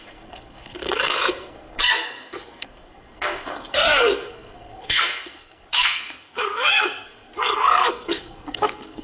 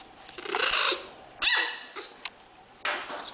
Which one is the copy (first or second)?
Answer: first